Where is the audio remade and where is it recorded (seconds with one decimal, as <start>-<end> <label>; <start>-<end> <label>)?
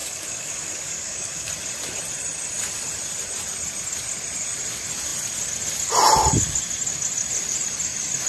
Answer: 0.0-1.5 remade; 1.5-8.3 recorded